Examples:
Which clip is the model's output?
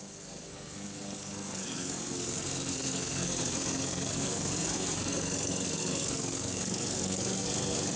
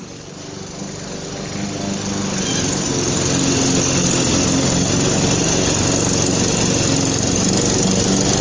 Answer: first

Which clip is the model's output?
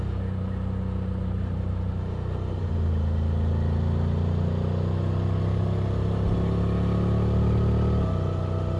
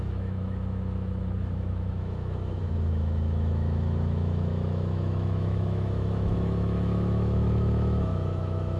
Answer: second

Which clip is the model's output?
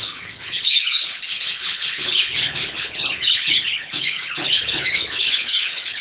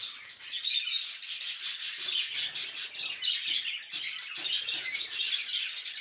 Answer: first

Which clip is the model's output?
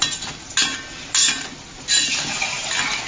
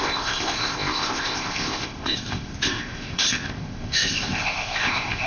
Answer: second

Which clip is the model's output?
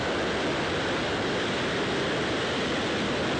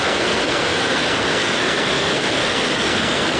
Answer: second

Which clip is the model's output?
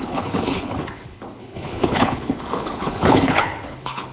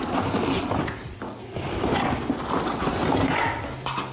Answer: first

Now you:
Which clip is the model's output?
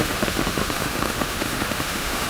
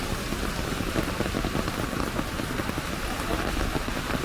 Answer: first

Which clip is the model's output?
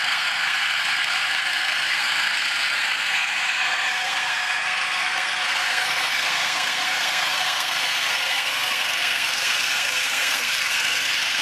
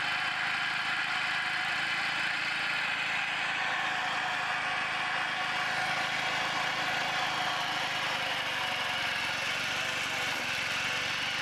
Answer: first